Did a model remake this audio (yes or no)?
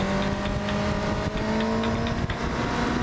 no